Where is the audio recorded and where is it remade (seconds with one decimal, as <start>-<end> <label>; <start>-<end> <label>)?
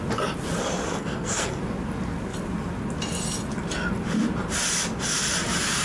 0.0-0.9 recorded; 0.9-1.6 remade; 1.6-5.8 recorded